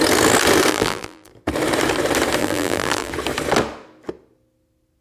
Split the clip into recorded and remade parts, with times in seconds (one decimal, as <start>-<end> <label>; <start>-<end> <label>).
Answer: 0.0-0.7 recorded; 0.7-1.3 remade; 1.3-2.4 recorded; 2.4-3.1 remade; 3.1-5.0 recorded